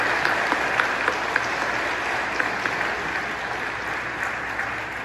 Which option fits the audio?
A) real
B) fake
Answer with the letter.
A